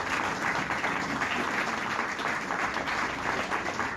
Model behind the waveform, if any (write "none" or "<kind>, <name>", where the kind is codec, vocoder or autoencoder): none